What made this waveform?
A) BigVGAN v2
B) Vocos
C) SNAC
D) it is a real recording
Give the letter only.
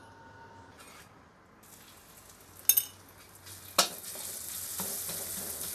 D